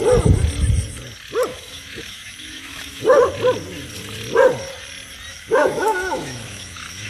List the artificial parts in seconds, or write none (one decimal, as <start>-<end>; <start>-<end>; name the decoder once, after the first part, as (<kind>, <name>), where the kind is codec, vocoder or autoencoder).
1.5-3.0 (autoencoder, DAC-VAE); 5.3-7.1